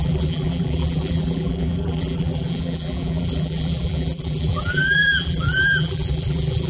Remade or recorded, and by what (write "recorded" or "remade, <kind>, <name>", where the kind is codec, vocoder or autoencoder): remade, vocoder, BigVGAN v2